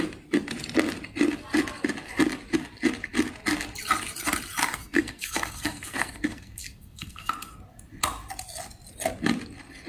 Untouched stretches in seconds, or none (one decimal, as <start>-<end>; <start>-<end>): 0.0-4.6; 7.3-9.9